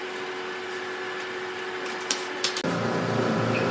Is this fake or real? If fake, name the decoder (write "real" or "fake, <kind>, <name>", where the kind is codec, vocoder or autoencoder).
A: real